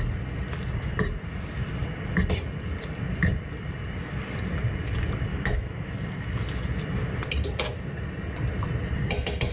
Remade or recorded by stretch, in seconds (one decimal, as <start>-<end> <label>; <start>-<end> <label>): 0.0-5.3 recorded; 5.3-5.9 remade; 5.9-9.5 recorded